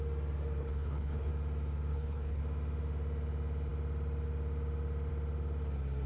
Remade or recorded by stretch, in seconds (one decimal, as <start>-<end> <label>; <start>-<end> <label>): 0.0-0.6 recorded; 0.6-1.3 remade; 1.3-1.9 recorded; 1.9-2.4 remade; 2.4-6.1 recorded